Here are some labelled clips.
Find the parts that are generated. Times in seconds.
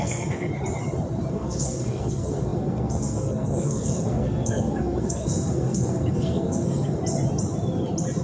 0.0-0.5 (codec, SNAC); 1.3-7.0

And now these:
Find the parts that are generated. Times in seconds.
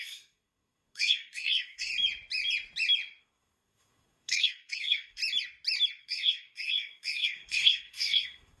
0.0-1.9 (codec, SNAC); 3.2-5.2; 6.0-8.6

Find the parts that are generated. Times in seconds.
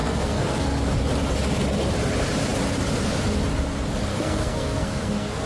0.0-0.9 (codec, SNAC); 4.1-5.5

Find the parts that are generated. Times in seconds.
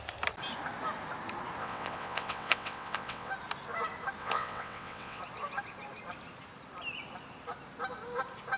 1.6-3.3 (vocoder, WaveNeXt); 4.2-5.2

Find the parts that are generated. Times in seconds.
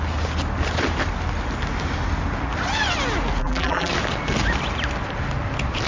3.4-3.9 (vocoder, BigVGAN v2)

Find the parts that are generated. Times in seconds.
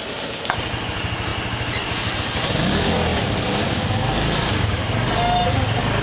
none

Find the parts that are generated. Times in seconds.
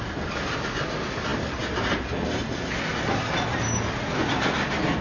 none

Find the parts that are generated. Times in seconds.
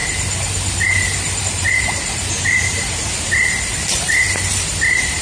0.0-5.2 (vocoder, BigVGAN v2)